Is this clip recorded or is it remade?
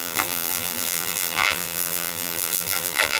remade